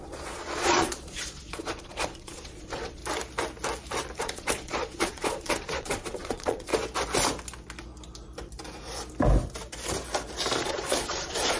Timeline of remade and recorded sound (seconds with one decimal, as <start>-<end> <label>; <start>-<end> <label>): 0.0-3.0 remade; 3.0-4.2 recorded; 4.2-6.7 remade; 6.7-10.6 recorded; 10.6-11.6 remade

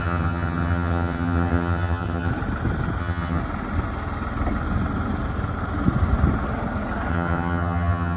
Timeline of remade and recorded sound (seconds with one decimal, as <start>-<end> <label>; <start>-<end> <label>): 0.0-2.3 remade; 2.3-3.0 recorded; 3.0-3.4 remade; 3.4-7.1 recorded; 7.1-8.2 remade

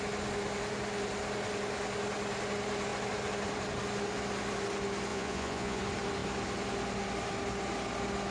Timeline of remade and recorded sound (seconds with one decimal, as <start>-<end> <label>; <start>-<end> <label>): 0.0-5.1 recorded; 5.1-5.8 remade; 5.8-8.3 recorded